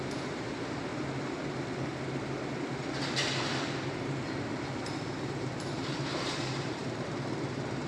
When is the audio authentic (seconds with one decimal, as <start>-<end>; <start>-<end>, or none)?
0.9-5.6